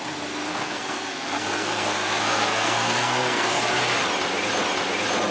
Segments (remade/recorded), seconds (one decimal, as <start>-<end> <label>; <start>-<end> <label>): 0.0-0.5 recorded; 0.5-3.7 remade; 3.7-5.3 recorded